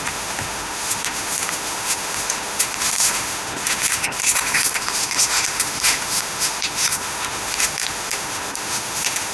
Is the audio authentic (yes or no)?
no